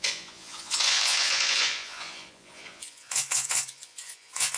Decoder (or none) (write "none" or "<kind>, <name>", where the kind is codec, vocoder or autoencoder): vocoder, Vocos